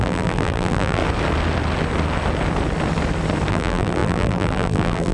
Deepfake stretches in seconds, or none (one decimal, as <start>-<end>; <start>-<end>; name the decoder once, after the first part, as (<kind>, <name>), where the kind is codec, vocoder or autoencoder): 0.0-1.0 (vocoder, BigVGAN v2); 3.5-5.1